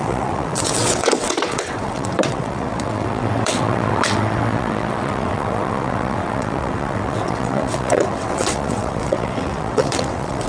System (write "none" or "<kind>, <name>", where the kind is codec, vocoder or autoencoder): vocoder, WaveNeXt